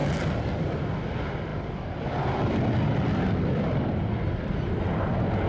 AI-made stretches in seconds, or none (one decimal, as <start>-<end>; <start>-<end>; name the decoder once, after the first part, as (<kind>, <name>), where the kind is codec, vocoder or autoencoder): 0.9-5.5 (vocoder, BigVGAN v2)